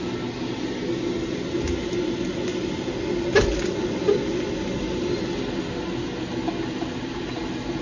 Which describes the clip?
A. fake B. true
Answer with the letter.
B